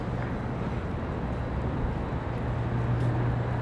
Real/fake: real